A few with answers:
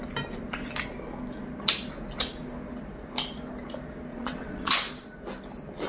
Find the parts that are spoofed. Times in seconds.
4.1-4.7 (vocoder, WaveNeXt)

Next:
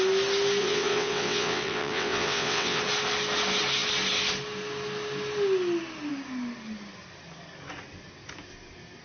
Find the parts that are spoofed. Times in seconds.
0.6-2.8 (vocoder, WaveNeXt)

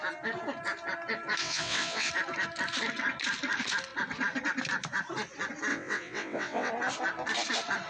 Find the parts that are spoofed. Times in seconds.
1.4-2.1 (vocoder, WaveNeXt); 5.7-6.7

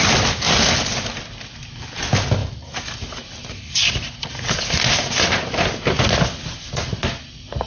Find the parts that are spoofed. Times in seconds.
none